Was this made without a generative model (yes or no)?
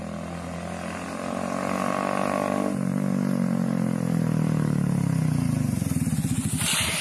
yes